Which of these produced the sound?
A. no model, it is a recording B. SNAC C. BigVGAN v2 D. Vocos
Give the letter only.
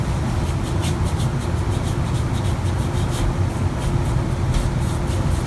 A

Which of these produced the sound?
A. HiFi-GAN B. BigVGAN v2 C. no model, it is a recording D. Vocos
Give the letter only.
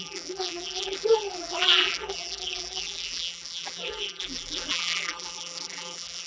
B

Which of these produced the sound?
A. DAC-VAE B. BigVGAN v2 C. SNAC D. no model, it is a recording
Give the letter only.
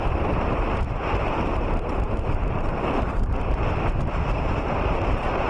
B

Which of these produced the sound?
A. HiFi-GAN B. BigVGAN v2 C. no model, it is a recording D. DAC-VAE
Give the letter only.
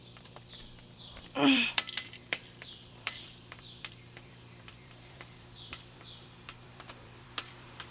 B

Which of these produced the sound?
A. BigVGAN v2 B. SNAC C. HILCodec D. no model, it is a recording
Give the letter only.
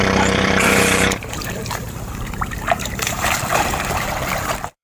A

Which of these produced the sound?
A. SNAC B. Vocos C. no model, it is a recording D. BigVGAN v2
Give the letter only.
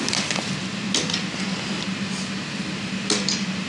C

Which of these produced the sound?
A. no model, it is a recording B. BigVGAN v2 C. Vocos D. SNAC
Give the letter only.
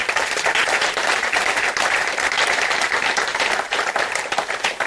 B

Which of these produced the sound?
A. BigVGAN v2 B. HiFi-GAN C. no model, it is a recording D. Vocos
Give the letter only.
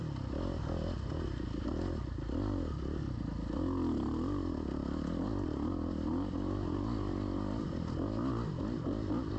C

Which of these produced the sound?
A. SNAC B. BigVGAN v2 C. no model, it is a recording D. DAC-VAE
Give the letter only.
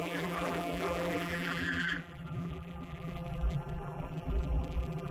B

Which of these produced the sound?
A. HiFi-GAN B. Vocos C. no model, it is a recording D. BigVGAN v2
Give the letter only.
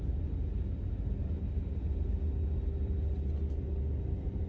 C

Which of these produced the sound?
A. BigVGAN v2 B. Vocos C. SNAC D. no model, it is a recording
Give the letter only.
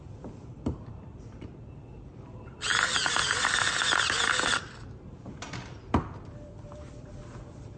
A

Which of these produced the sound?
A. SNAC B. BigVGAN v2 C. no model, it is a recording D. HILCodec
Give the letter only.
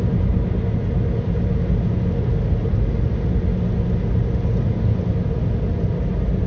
C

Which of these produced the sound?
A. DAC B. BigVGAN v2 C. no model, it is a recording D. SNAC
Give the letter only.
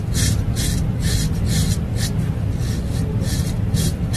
C